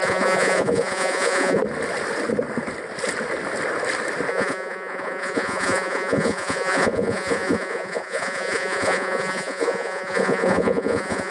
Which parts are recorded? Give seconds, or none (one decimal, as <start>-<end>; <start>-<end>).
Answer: 1.6-4.3